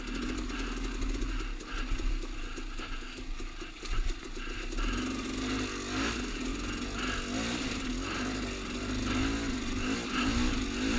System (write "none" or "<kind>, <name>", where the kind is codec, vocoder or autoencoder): none